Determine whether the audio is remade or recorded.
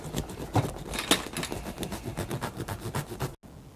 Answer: recorded